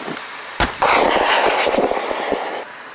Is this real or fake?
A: real